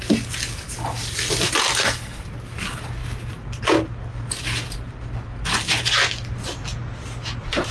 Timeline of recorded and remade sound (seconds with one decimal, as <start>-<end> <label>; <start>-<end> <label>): 0.0-1.7 recorded; 1.7-2.2 remade; 2.2-7.7 recorded